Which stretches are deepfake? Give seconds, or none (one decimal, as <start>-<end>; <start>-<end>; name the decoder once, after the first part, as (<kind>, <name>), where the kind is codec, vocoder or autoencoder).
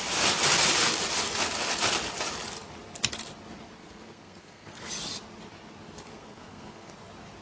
3.8-4.9 (codec, SNAC); 6.1-6.9